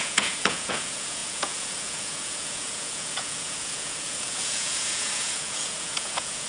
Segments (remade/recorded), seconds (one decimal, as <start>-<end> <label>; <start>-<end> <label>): 0.0-6.5 remade